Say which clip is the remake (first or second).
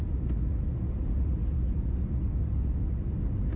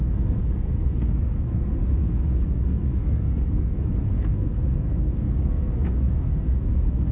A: second